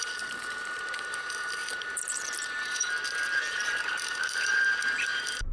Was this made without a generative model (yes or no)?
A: no